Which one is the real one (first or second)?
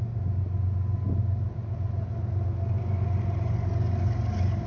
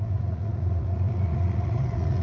first